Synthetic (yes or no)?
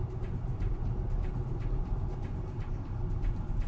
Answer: no